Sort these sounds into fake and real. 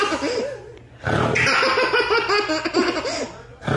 real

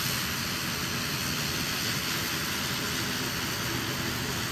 real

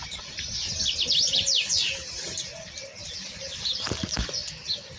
real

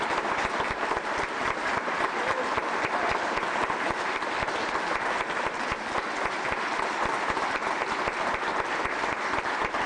real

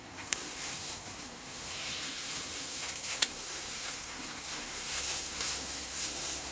fake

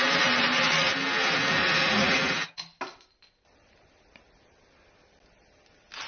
real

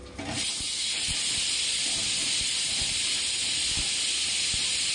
real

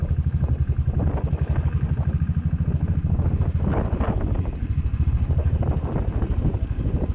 real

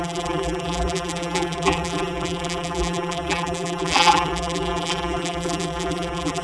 fake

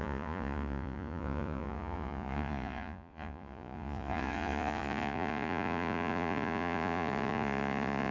fake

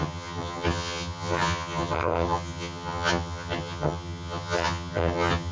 fake